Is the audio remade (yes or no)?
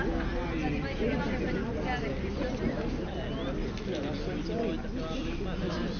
no